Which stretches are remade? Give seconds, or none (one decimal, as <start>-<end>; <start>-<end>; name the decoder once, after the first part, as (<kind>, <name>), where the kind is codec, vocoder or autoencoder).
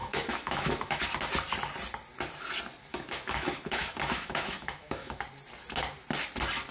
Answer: 0.0-1.0 (autoencoder, DAC-VAE); 2.9-5.2